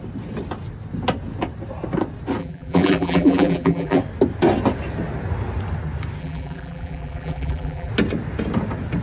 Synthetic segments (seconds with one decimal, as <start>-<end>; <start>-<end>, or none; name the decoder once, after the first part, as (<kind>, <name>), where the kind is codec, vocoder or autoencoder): 2.4-4.0 (vocoder, BigVGAN v2); 6.2-7.9

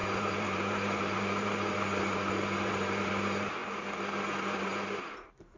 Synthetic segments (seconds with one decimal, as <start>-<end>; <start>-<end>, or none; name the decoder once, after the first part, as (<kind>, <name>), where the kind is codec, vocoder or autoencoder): 0.0-5.6 (vocoder, BigVGAN v2)

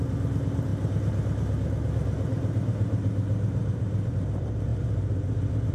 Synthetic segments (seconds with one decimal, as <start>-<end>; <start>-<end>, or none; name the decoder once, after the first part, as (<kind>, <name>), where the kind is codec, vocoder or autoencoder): 0.0-5.7 (vocoder, BigVGAN v2)

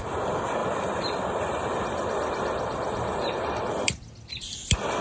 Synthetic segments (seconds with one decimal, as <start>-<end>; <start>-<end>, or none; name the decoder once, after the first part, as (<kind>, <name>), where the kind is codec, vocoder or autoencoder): 0.6-3.6 (vocoder, BigVGAN v2)

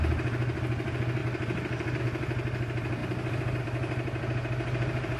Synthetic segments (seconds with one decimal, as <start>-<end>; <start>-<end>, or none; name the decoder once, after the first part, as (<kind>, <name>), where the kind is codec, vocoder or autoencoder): none